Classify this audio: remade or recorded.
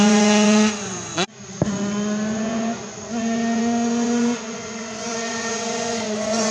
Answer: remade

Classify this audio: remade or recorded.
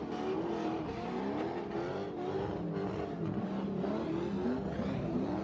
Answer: recorded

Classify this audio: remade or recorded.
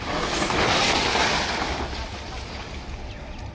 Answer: recorded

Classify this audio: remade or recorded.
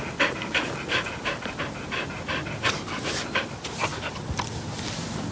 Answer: recorded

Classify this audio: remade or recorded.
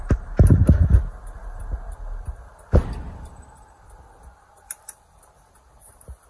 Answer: recorded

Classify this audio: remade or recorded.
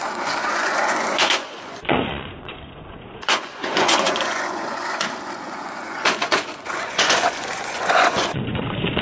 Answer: remade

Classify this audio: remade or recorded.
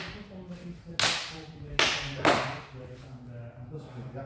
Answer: recorded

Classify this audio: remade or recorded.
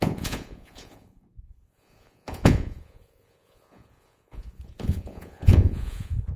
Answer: remade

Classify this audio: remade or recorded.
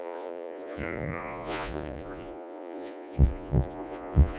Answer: remade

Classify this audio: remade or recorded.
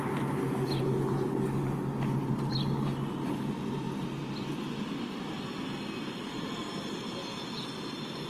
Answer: recorded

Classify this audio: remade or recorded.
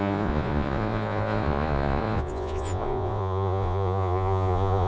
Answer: remade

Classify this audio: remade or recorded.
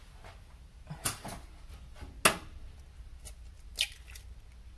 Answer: recorded